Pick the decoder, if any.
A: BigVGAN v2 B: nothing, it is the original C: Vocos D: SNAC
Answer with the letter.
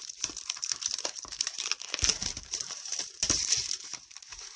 A